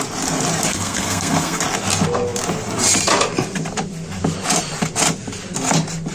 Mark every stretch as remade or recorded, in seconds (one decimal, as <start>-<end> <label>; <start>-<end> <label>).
0.0-0.7 recorded; 0.7-1.6 remade; 1.6-6.1 recorded